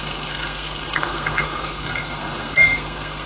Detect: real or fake fake